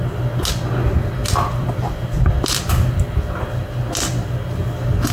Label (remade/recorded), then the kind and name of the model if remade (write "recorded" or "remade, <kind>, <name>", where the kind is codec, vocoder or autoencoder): recorded